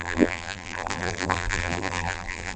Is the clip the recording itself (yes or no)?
no